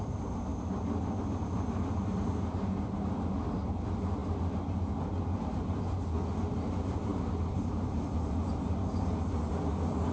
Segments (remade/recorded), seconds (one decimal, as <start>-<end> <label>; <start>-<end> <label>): 0.0-10.1 recorded